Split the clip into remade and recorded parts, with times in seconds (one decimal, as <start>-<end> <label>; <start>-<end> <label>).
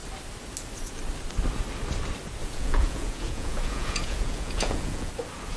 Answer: 0.0-2.4 recorded; 2.4-5.1 remade; 5.1-5.6 recorded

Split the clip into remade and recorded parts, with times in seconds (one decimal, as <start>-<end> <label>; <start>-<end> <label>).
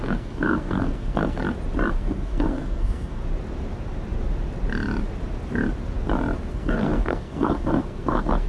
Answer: 0.0-1.4 remade; 1.4-1.9 recorded; 1.9-3.2 remade; 3.2-6.5 recorded; 6.5-8.5 remade